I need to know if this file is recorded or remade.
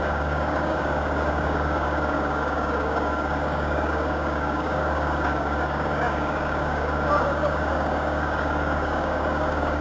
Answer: remade